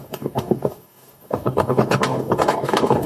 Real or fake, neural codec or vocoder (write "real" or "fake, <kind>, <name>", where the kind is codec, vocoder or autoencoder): fake, codec, DAC